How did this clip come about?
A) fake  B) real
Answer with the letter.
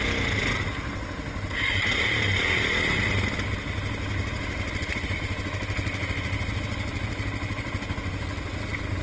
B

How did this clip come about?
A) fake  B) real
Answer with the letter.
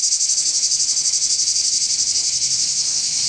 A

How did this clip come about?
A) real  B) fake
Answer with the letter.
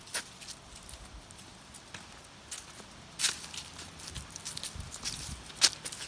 A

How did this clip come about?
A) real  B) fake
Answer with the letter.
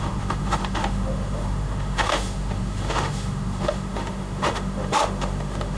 B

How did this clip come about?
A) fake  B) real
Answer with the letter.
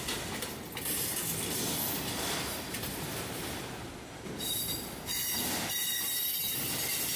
B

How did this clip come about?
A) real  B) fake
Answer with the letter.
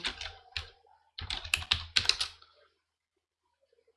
A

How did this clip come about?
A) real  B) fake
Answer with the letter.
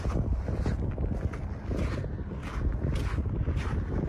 A